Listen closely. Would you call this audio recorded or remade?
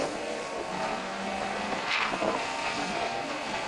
remade